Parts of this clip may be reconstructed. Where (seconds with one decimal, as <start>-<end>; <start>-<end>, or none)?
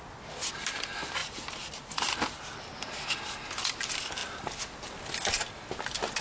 1.2-2.0